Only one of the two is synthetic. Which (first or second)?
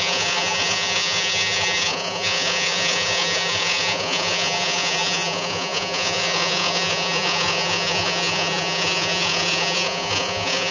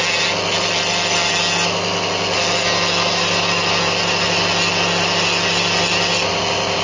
first